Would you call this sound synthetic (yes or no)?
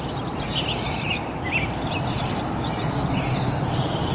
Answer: no